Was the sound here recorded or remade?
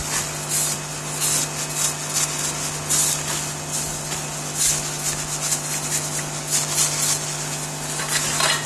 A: recorded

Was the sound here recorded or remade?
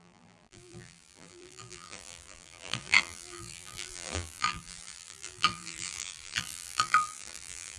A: remade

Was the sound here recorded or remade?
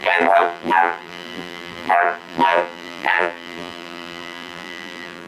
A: remade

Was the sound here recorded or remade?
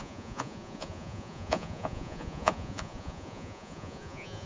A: remade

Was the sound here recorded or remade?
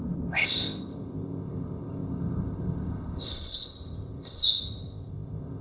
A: remade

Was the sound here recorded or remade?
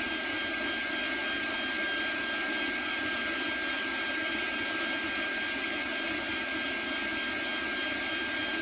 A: recorded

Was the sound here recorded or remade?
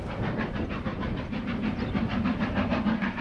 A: recorded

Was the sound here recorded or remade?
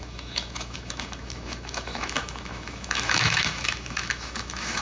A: remade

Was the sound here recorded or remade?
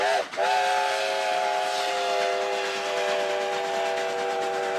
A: recorded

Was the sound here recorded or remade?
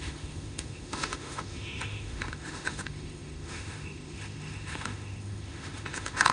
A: remade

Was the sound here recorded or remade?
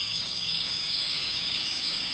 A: remade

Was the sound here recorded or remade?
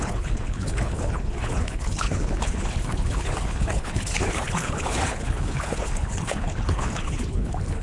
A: remade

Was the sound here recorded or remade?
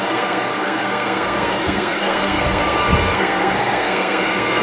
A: remade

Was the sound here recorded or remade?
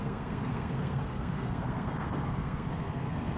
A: remade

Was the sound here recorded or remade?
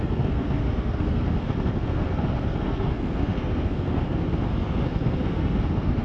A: remade